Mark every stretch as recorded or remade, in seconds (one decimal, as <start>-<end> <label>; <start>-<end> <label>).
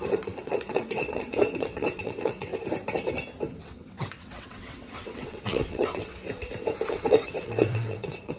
0.0-2.5 remade; 2.5-3.6 recorded; 3.6-6.2 remade; 6.2-6.9 recorded; 6.9-8.4 remade